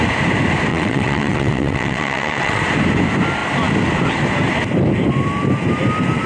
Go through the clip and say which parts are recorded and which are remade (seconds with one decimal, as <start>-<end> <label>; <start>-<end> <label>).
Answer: 0.0-0.7 recorded; 0.7-2.6 remade; 2.6-6.3 recorded

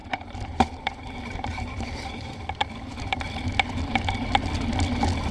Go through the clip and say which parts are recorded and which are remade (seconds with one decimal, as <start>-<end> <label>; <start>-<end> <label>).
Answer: 0.0-2.0 remade; 2.0-5.3 recorded

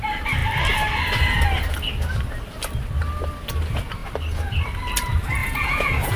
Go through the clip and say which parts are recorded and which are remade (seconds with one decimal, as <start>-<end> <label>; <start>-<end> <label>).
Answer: 0.0-5.4 recorded; 5.4-6.2 remade